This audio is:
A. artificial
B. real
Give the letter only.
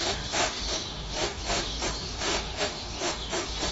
A